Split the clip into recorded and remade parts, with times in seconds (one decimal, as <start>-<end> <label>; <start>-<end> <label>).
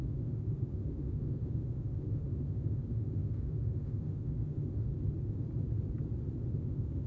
0.0-4.9 remade; 4.9-6.5 recorded; 6.5-7.1 remade